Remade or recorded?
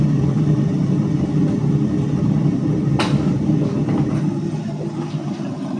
recorded